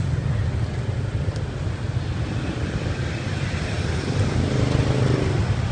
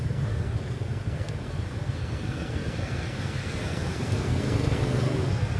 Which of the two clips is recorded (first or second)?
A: first